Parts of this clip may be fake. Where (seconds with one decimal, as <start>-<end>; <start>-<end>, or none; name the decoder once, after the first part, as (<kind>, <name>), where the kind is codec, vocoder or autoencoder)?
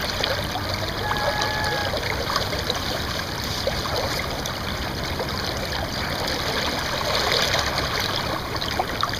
1.8-6.2 (vocoder, BigVGAN v2)